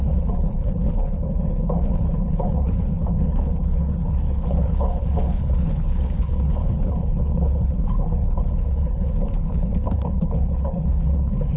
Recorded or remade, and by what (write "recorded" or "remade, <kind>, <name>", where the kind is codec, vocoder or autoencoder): remade, codec, HILCodec